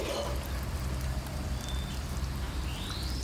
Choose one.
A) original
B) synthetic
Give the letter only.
B